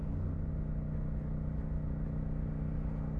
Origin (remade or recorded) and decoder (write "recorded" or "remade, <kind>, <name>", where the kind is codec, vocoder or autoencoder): recorded